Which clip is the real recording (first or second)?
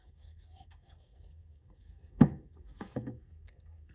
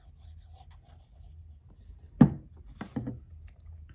second